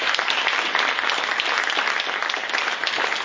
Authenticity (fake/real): real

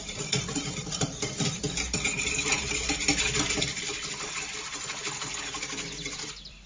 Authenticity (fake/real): fake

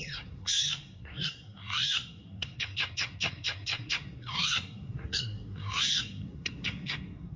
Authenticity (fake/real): fake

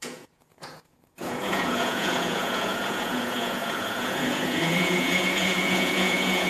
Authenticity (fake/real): fake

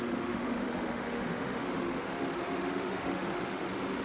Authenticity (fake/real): fake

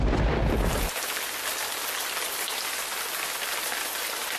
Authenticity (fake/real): real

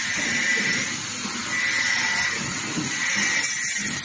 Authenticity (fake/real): real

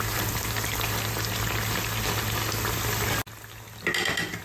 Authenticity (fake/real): real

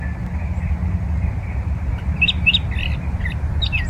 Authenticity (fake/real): real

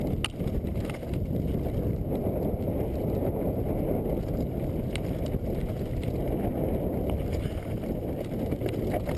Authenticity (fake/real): real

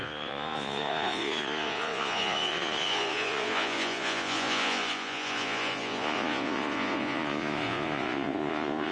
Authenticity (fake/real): fake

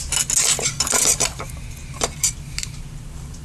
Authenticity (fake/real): real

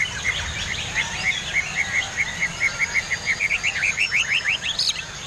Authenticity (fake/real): real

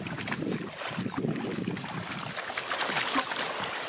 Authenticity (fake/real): real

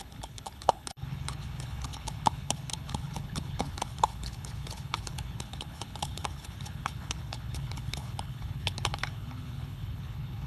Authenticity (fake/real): fake